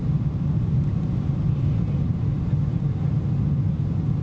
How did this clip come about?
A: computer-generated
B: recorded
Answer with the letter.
B